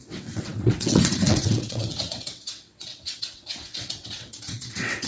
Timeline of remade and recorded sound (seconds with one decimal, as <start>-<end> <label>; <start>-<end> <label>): 0.0-5.1 remade